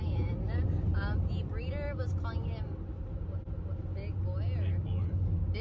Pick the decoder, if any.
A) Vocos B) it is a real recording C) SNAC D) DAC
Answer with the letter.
B